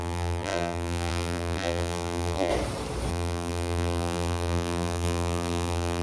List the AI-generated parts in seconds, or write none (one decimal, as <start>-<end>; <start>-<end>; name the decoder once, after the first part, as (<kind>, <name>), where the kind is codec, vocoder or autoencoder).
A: 0.0-2.5 (vocoder, BigVGAN v2); 3.1-6.0